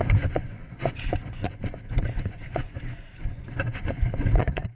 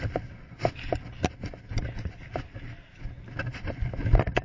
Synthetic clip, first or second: first